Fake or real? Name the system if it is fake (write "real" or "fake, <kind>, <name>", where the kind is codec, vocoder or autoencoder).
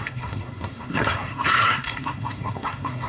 fake, codec, SNAC